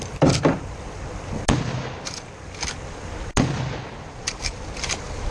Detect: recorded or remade recorded